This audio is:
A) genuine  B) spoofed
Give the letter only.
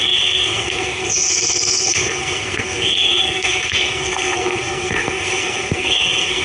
B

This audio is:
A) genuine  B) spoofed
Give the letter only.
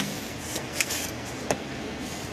B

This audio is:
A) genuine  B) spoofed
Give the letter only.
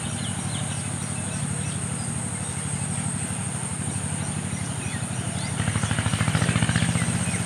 A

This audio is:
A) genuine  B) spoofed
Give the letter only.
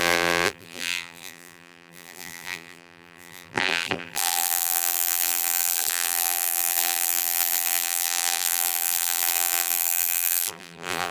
B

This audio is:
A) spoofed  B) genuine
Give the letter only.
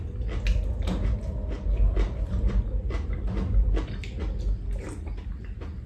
B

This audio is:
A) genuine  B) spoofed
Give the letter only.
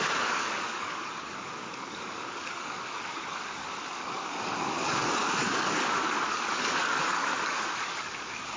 B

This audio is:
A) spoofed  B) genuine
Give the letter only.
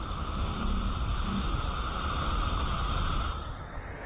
B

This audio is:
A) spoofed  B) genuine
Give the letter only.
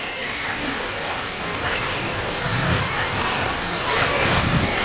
A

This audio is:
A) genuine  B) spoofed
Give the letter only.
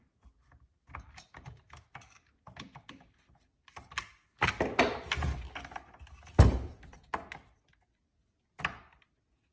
A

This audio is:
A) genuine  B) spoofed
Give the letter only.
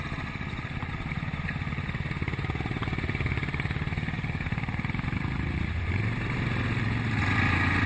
A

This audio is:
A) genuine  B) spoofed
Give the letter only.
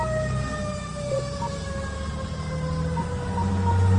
A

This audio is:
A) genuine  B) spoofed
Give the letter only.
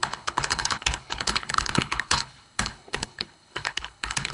B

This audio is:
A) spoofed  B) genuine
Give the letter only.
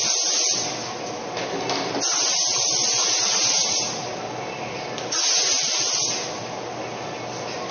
B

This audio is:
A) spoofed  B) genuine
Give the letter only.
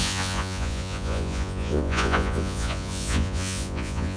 A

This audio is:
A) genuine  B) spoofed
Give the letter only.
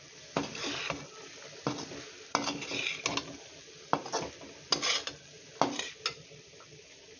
A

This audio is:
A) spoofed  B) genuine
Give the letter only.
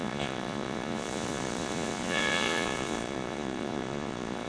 A